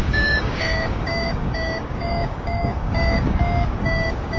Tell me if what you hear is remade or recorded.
remade